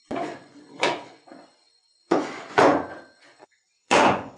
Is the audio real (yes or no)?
no